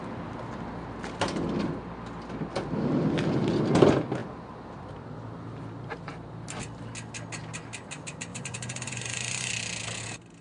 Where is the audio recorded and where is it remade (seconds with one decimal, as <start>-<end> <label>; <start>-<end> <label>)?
0.0-8.3 recorded; 8.3-9.5 remade; 9.5-10.4 recorded